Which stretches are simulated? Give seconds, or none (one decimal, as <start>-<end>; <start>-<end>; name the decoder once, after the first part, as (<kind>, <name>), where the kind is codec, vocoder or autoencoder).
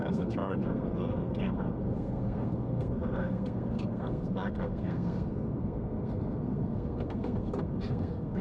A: 0.0-8.4 (codec, SNAC)